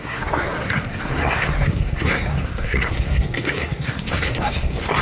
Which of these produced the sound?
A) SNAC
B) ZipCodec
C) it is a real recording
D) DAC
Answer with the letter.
A